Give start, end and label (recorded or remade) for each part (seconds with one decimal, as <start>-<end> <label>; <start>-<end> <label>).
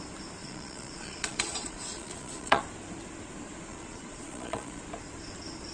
0.0-0.4 recorded; 0.4-2.6 remade; 2.6-3.7 recorded; 3.7-4.8 remade; 4.8-5.7 recorded